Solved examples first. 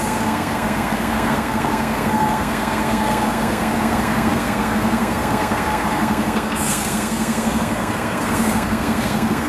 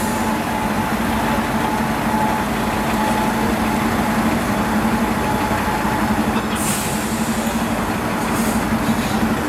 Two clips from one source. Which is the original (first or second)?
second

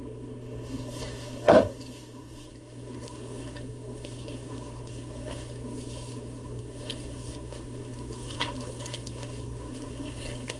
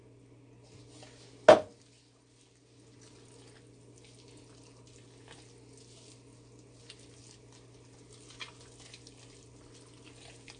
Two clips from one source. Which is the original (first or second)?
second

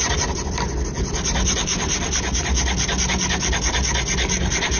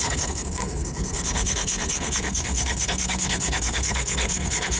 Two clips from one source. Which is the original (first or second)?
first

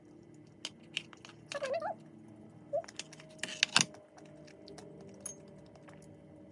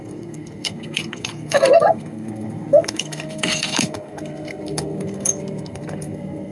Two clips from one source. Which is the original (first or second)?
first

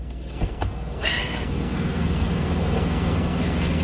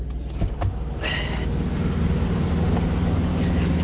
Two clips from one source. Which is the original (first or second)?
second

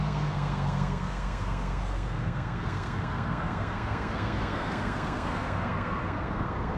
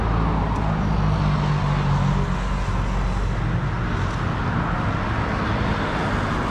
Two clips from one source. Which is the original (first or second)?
second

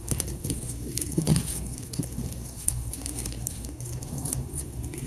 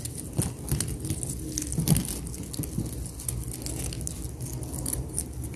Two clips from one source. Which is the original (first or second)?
second